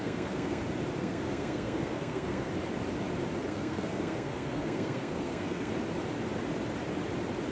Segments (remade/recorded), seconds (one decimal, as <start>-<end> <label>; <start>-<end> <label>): 0.0-0.6 remade; 0.6-1.0 recorded; 1.0-2.5 remade; 2.5-3.5 recorded; 3.5-5.7 remade; 5.7-7.5 recorded